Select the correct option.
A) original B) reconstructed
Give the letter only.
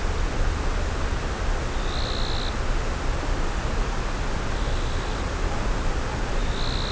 A